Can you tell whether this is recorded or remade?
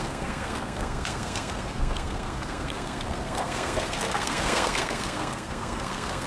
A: remade